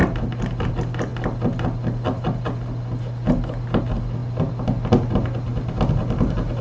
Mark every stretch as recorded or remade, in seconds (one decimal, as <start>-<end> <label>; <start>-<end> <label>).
0.0-6.6 recorded